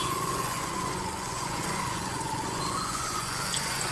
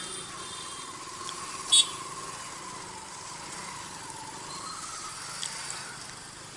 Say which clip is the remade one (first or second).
first